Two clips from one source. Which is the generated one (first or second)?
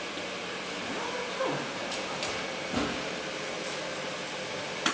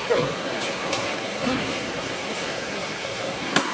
second